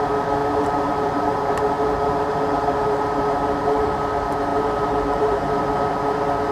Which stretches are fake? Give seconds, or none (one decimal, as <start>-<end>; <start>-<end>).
0.4-3.9; 4.5-5.6